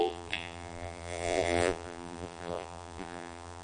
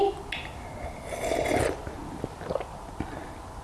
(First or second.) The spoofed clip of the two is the first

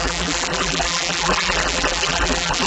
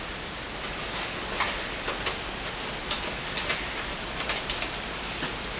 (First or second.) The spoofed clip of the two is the first